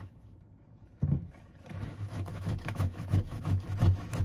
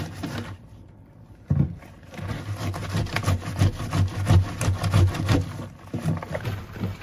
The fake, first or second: first